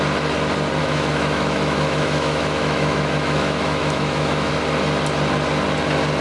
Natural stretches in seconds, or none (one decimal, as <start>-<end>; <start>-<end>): 0.0-0.8; 4.5-6.2